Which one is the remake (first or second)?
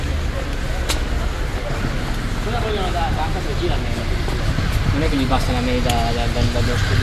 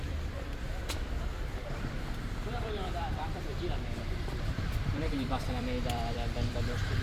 second